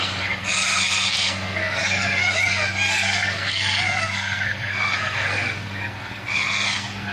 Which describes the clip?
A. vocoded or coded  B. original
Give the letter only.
A